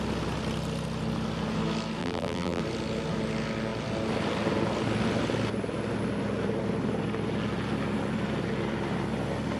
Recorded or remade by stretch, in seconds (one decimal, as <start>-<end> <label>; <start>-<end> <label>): 0.0-2.0 recorded; 2.0-2.6 remade; 2.6-9.6 recorded